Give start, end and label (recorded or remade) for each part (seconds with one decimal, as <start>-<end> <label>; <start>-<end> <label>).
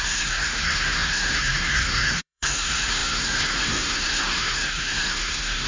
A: 0.0-5.7 remade